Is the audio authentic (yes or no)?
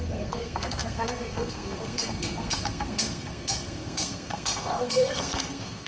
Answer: no